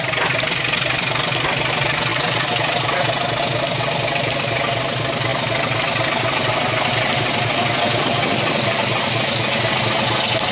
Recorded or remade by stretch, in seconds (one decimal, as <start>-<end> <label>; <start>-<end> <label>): 0.0-10.5 recorded